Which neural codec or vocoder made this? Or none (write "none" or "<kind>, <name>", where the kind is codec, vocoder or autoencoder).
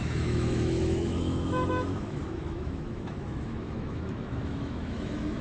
autoencoder, DAC-VAE